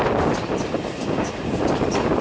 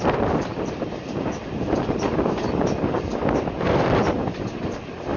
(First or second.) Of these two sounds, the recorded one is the first